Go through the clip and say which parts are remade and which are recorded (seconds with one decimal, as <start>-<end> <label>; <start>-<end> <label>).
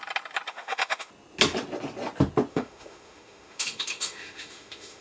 0.0-0.5 recorded; 0.5-1.1 remade; 1.1-2.5 recorded; 2.5-5.0 remade